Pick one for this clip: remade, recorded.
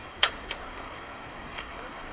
remade